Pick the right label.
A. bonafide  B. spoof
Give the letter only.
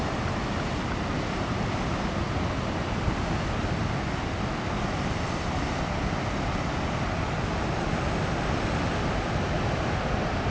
A